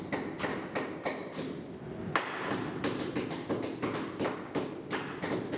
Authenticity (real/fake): real